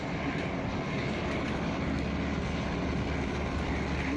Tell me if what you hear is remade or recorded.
recorded